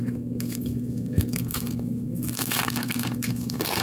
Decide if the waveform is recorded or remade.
remade